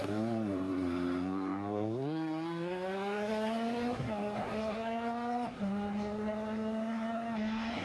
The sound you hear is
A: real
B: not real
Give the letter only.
B